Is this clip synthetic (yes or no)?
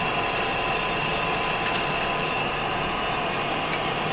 no